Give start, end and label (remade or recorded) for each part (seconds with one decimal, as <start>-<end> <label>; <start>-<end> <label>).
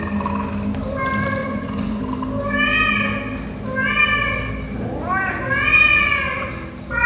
0.0-1.4 recorded; 1.4-2.0 remade; 2.0-5.9 recorded; 5.9-6.5 remade; 6.5-7.1 recorded